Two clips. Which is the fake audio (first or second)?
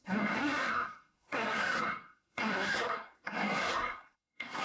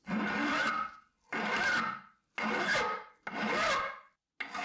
first